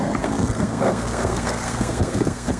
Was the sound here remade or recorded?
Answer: remade